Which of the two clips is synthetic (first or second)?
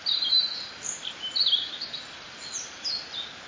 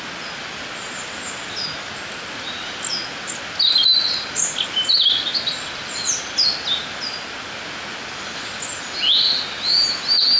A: first